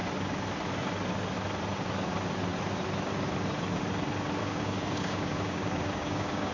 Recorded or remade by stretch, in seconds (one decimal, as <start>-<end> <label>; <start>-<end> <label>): 0.0-4.4 recorded; 4.4-6.5 remade